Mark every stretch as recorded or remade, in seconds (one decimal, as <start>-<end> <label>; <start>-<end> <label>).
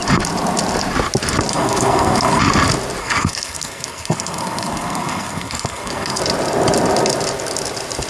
0.0-1.5 recorded; 1.5-2.4 remade; 2.4-3.0 recorded; 3.0-6.2 remade; 6.2-8.1 recorded